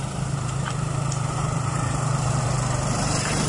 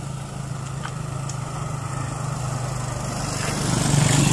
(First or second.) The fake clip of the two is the first